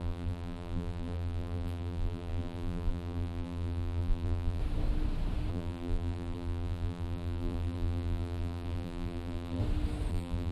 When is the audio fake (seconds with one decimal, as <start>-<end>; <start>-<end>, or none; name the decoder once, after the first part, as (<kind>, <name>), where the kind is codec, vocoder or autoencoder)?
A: 0.0-4.6 (vocoder, BigVGAN v2); 5.5-9.6; 10.1-10.5